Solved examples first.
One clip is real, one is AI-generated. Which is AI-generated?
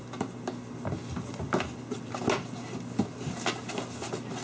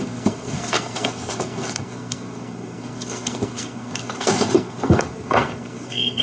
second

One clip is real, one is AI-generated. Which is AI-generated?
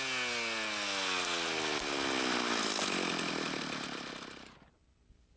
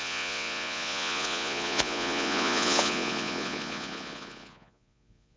second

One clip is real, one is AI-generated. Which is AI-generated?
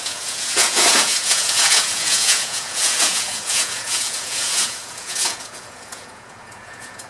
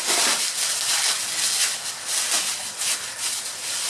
first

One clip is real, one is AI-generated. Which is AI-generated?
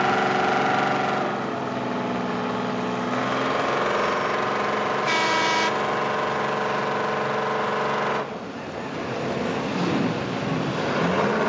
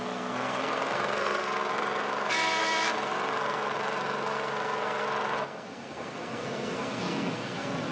second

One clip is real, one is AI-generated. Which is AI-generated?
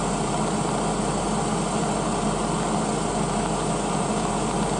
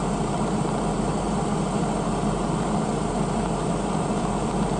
second